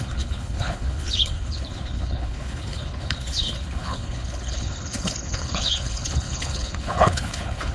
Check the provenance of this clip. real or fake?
fake